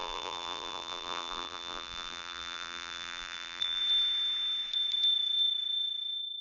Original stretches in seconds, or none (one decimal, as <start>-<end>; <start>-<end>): 3.8-6.4